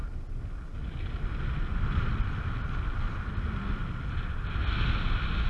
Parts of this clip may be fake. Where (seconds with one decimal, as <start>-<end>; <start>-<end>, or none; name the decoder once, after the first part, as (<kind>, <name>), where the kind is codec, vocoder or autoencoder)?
none